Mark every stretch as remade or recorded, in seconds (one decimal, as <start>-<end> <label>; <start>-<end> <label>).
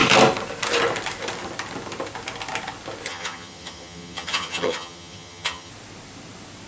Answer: 0.0-3.1 recorded; 3.1-5.7 remade; 5.7-6.7 recorded